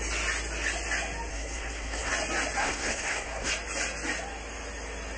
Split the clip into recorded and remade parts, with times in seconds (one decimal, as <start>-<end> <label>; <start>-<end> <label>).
0.0-1.3 recorded; 1.3-2.1 remade; 2.1-2.6 recorded; 2.6-3.5 remade; 3.5-5.2 recorded